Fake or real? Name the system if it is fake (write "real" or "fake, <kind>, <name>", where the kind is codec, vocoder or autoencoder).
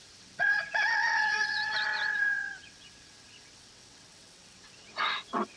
fake, vocoder, WaveNeXt